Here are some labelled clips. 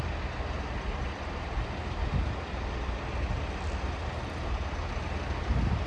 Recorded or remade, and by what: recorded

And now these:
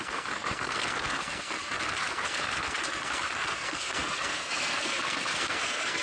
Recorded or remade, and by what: remade, codec, SNAC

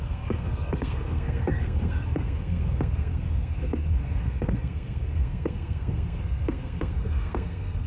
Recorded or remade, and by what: remade, codec, SNAC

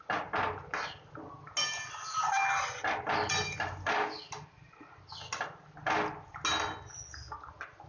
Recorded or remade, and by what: recorded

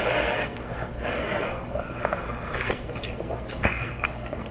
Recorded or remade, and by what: remade, codec, SNAC